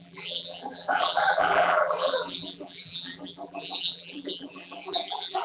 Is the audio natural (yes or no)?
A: no